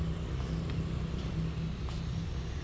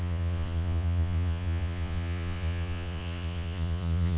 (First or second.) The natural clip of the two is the first